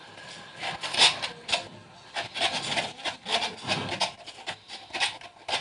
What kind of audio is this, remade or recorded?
recorded